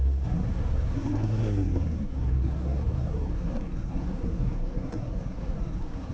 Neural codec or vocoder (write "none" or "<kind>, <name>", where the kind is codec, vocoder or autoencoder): codec, SNAC